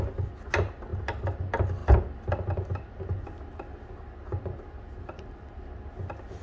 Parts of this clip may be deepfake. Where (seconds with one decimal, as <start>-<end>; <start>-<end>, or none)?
none